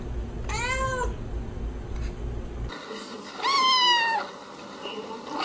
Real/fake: real